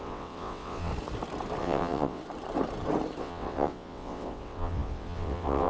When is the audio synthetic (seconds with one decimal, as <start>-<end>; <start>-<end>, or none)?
0.0-0.9; 1.6-2.2; 3.2-5.7